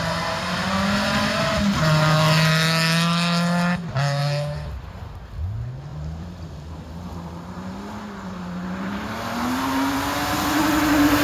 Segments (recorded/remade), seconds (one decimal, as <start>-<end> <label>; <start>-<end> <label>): 0.0-4.2 recorded; 4.2-5.0 remade; 5.0-5.9 recorded; 5.9-7.4 remade; 7.4-11.2 recorded